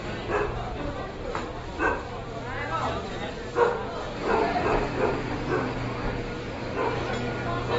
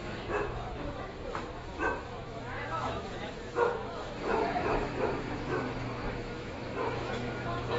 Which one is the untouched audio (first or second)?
first